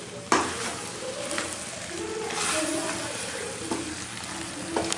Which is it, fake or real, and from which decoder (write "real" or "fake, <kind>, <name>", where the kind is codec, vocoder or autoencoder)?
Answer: real